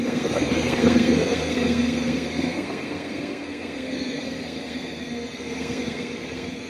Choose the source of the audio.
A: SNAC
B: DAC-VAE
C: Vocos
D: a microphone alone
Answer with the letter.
A